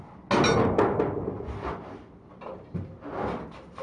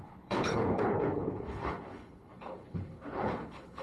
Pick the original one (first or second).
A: first